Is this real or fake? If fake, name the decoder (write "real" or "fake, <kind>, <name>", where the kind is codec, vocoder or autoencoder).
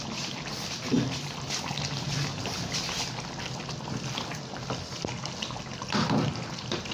real